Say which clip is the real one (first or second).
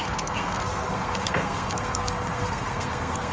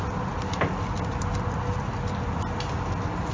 second